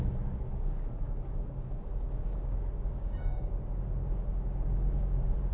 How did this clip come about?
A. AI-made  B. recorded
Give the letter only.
A